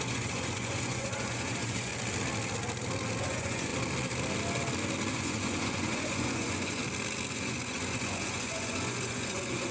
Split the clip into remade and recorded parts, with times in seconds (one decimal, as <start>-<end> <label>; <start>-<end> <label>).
0.0-1.9 remade; 1.9-3.2 recorded; 3.2-3.7 remade; 3.7-5.1 recorded; 5.1-6.8 remade; 6.8-7.3 recorded; 7.3-9.7 remade

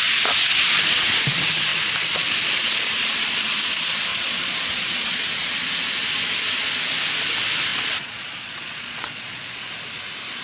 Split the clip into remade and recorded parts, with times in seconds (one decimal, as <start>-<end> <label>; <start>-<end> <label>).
0.0-4.1 recorded; 4.1-5.2 remade; 5.2-7.7 recorded; 7.7-9.7 remade; 9.7-10.4 recorded

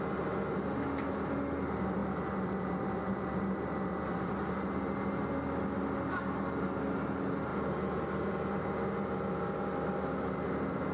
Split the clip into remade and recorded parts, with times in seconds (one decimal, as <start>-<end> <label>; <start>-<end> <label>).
0.0-10.9 recorded

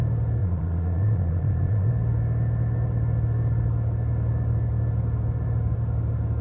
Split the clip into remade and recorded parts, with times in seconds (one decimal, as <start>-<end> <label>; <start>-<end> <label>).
0.0-0.4 recorded; 0.4-1.9 remade; 1.9-6.4 recorded

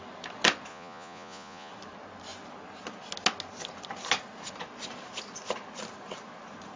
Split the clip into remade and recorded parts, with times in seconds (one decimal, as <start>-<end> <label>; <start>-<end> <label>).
0.0-0.7 recorded; 0.7-1.7 remade; 1.7-6.8 recorded

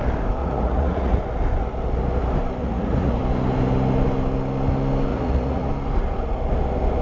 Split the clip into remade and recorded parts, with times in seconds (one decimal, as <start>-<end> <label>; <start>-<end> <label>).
0.0-0.4 recorded; 0.4-1.2 remade; 1.2-2.6 recorded; 2.6-3.2 remade; 3.2-5.1 recorded; 5.1-5.7 remade; 5.7-7.0 recorded